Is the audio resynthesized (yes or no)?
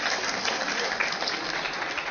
no